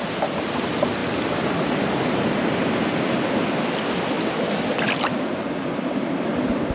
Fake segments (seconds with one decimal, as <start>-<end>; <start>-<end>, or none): none